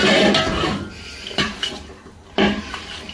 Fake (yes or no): yes